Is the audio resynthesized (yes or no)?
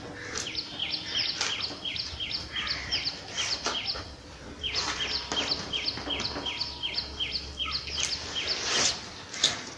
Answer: no